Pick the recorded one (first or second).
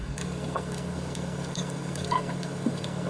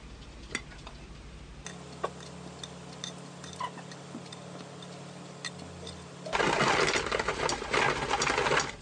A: second